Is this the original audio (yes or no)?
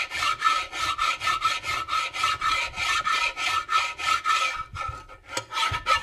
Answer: yes